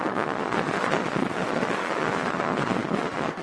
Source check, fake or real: fake